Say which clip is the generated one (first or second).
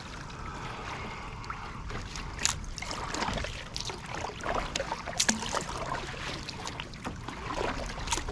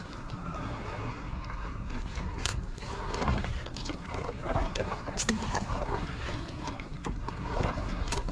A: second